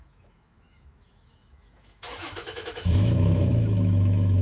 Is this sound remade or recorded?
remade